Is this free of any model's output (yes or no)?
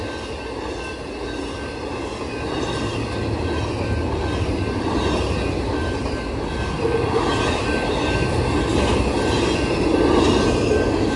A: yes